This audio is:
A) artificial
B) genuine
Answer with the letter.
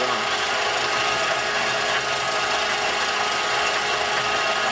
B